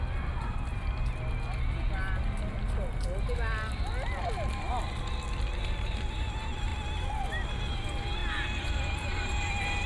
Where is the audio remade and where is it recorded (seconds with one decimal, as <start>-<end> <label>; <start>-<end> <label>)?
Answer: 0.0-9.9 recorded